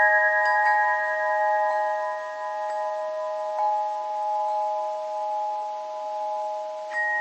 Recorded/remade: recorded